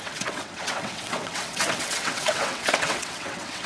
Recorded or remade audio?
remade